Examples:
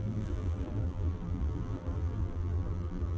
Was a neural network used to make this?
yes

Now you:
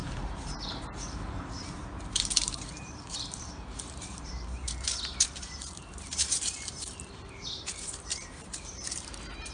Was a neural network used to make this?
yes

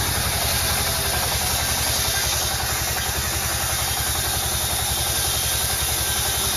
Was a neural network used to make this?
no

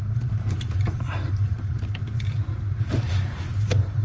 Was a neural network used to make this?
yes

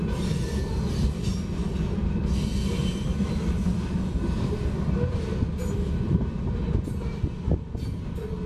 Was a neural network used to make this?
no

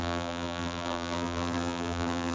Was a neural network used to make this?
yes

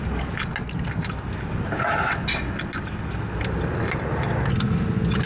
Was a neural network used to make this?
no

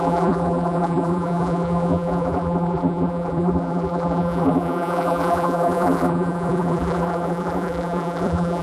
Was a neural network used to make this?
yes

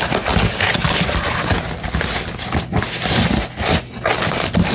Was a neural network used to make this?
no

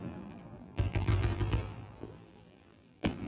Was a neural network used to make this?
yes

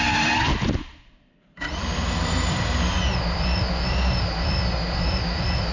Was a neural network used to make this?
yes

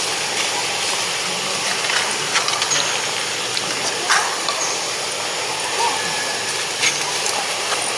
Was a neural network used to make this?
no